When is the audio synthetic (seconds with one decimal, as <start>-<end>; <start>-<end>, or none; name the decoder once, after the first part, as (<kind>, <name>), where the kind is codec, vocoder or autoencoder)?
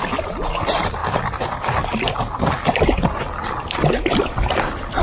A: 0.0-1.0 (vocoder, BigVGAN v2); 3.9-5.0